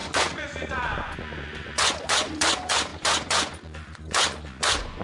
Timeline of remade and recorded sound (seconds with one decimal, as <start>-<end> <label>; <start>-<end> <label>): 0.0-5.0 remade

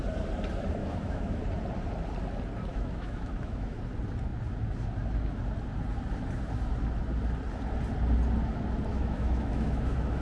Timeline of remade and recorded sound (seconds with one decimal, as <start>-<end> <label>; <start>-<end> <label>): 0.0-0.8 recorded; 0.8-1.4 remade; 1.4-2.7 recorded; 2.7-3.8 remade; 3.8-8.9 recorded; 8.9-10.2 remade

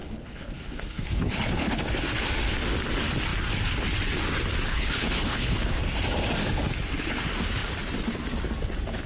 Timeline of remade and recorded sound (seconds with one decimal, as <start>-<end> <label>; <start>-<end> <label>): 0.0-1.8 remade; 1.8-4.7 recorded; 4.7-5.8 remade; 5.8-9.1 recorded

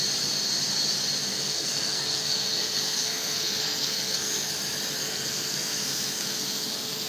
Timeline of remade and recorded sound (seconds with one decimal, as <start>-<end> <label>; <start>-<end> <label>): 0.0-1.3 recorded; 1.3-4.5 remade; 4.5-5.0 recorded; 5.0-7.1 remade

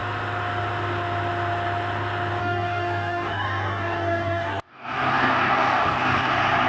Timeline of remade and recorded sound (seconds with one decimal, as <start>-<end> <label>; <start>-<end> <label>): 0.0-2.4 recorded; 2.4-6.3 remade; 6.3-6.7 recorded

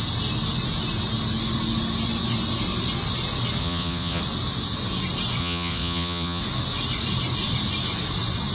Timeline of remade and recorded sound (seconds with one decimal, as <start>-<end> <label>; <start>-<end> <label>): 0.0-3.6 recorded; 3.6-4.2 remade; 4.2-5.4 recorded; 5.4-6.4 remade; 6.4-8.5 recorded

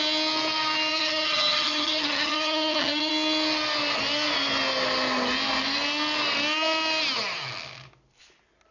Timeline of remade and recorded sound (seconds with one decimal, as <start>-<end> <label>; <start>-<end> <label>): 0.0-0.9 recorded; 0.9-3.1 remade; 3.1-8.7 recorded

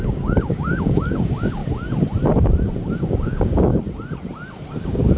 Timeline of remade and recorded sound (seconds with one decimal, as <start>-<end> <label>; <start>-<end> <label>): 0.0-1.6 remade; 1.6-3.0 recorded; 3.0-3.7 remade; 3.7-4.7 recorded; 4.7-5.2 remade